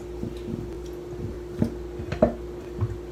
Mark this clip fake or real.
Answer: real